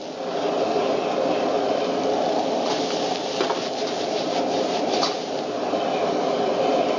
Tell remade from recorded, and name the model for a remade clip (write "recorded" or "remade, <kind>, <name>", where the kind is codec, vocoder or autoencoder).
recorded